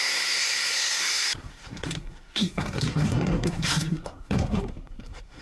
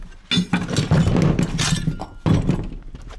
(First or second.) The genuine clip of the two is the second